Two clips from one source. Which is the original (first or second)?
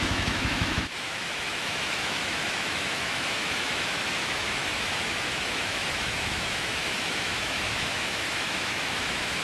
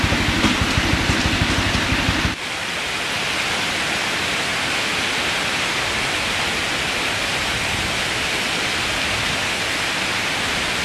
second